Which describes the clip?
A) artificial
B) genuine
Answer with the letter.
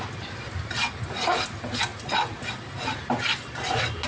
B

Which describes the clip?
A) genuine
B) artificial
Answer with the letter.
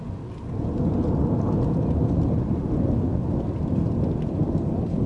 A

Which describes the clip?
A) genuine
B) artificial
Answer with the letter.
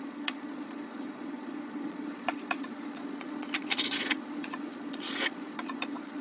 B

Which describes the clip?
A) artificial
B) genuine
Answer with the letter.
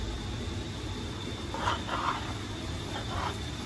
A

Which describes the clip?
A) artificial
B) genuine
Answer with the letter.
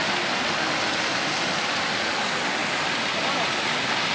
B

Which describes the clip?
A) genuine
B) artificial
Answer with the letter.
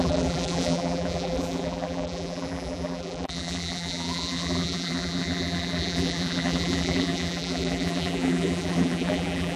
B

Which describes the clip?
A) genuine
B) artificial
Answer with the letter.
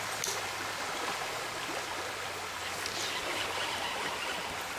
A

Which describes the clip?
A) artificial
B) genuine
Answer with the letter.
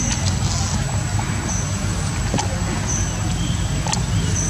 B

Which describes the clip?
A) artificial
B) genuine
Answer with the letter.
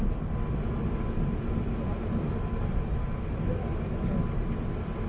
B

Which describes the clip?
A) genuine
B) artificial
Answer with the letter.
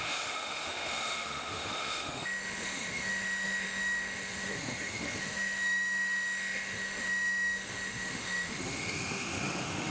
B